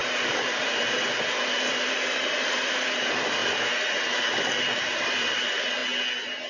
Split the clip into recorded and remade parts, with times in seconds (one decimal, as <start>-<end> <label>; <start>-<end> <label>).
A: 0.0-0.6 recorded; 0.6-3.4 remade; 3.4-4.4 recorded; 4.4-5.8 remade; 5.8-6.5 recorded